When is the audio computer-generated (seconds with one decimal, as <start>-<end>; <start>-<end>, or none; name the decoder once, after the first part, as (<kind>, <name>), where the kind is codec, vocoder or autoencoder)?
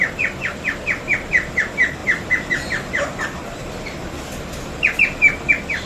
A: none